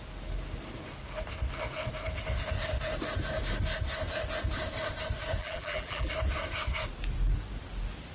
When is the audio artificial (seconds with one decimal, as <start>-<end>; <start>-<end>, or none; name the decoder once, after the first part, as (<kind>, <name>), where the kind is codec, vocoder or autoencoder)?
5.4-6.1 (vocoder, BigVGAN v2)